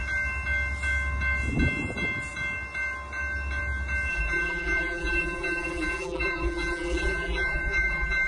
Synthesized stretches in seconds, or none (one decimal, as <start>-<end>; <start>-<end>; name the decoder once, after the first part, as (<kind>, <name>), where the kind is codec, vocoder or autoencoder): 4.1-8.3 (vocoder, BigVGAN v2)